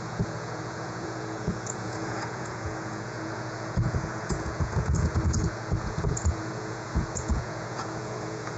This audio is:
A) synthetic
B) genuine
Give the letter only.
A